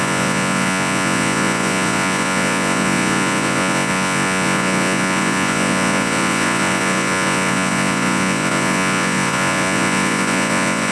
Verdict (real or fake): fake